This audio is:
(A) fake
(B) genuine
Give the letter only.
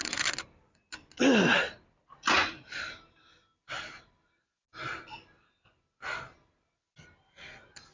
B